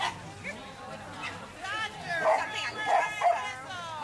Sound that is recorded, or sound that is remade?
recorded